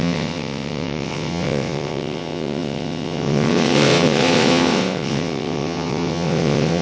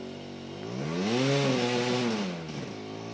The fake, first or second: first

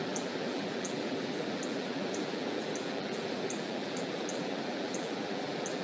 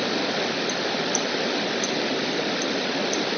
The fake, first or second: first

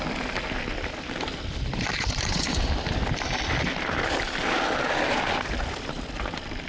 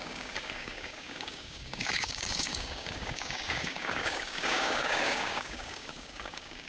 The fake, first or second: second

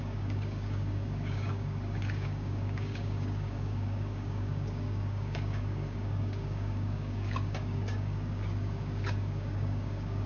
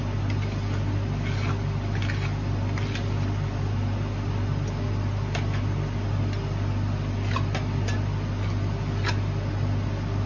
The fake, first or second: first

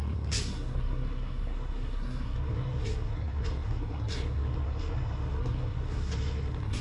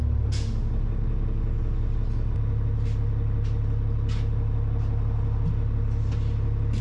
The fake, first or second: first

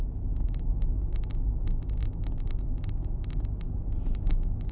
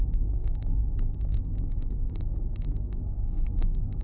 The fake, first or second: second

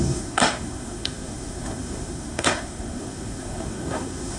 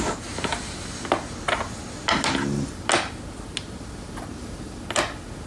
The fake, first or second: first